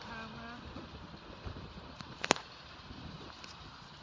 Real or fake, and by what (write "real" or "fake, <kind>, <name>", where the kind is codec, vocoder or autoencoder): real